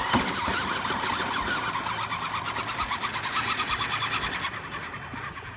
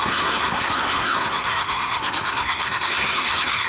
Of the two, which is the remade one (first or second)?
second